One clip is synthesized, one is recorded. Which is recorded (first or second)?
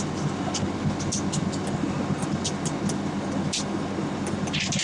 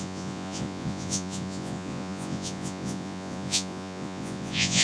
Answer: first